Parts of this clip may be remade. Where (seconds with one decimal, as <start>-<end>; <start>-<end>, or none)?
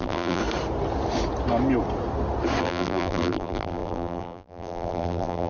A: 0.0-0.4; 2.6-5.5